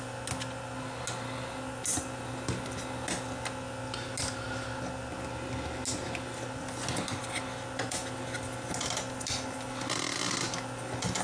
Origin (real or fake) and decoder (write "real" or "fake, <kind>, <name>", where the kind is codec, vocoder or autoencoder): real